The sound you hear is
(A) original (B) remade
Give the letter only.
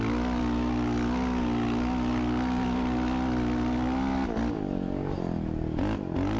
A